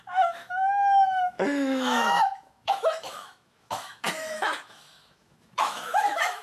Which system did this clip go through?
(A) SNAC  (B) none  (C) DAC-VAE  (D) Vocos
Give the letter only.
C